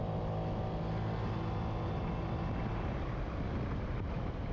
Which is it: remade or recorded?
recorded